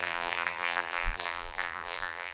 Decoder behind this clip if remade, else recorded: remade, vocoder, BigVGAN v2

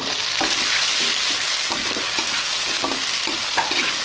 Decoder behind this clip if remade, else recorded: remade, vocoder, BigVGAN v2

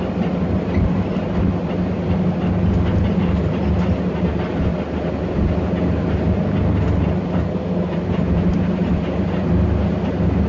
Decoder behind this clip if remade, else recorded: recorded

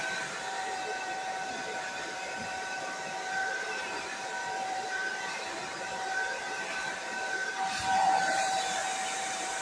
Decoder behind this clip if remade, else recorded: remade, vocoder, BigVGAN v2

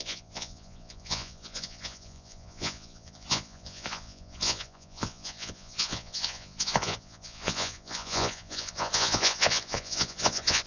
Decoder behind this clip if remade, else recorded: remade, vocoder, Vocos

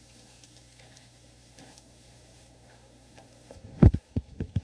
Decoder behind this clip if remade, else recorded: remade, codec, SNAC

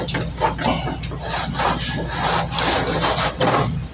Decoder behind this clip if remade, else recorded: recorded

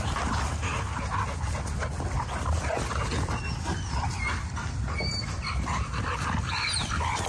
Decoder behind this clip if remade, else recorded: recorded